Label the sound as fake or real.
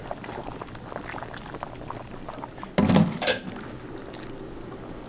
real